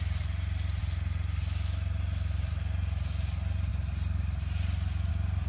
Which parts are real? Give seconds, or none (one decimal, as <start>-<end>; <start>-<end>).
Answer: 0.0-5.5